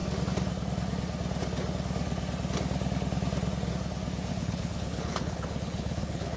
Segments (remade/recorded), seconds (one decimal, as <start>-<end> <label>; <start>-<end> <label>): 0.0-4.3 recorded; 4.3-6.4 remade